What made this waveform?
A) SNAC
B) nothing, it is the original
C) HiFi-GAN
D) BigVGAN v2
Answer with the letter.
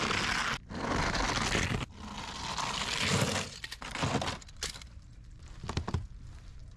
B